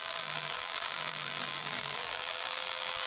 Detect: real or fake fake